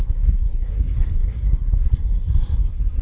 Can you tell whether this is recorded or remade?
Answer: remade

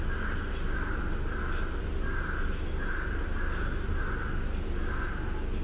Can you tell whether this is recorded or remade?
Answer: recorded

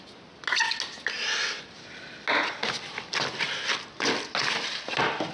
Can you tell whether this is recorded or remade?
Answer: recorded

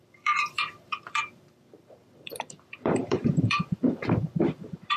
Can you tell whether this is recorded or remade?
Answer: remade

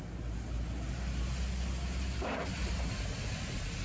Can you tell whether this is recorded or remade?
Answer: recorded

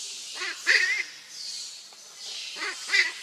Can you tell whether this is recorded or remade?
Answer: recorded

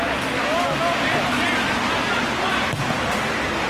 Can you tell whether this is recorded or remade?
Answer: recorded